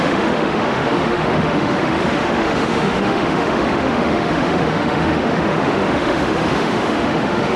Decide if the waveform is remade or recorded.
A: remade